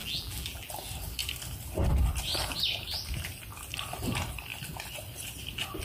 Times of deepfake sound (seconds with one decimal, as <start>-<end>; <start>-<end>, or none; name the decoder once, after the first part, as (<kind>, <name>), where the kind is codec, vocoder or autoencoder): 0.0-0.7 (vocoder, BigVGAN v2)